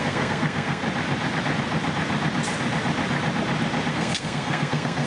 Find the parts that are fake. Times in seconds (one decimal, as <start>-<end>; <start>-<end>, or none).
0.0-0.8; 3.9-5.1